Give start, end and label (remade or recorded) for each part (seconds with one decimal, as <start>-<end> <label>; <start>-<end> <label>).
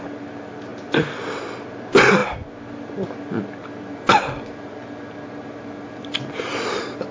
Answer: 0.0-7.1 recorded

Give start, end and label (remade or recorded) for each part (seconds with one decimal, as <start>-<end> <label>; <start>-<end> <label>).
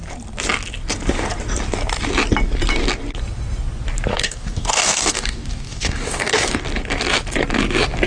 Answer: 0.0-4.1 recorded; 4.1-6.5 remade; 6.5-8.1 recorded